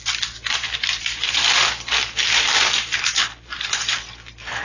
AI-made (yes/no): yes